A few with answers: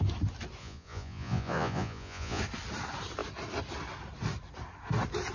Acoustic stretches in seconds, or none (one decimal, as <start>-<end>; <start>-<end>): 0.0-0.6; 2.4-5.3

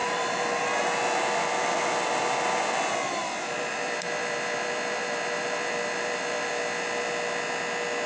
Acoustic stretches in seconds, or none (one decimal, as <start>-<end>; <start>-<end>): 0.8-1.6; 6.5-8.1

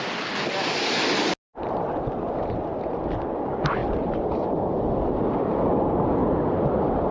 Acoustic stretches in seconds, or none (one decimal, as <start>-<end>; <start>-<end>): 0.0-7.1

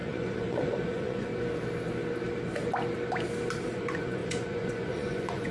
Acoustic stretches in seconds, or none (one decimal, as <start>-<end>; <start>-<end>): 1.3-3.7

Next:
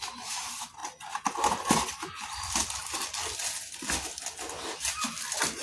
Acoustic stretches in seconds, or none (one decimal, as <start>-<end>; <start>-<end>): 0.0-5.6